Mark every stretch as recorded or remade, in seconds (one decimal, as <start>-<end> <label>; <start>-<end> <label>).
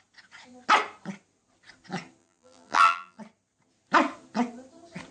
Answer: 0.0-2.2 recorded; 2.2-3.2 remade; 3.2-5.1 recorded